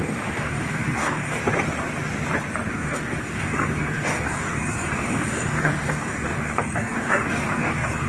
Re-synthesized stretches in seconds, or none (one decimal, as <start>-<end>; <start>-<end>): 0.0-1.4; 2.7-8.1

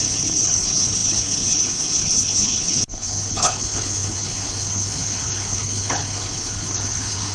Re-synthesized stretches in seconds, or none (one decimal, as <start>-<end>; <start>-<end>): 0.0-7.3